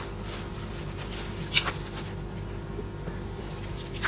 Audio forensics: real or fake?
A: real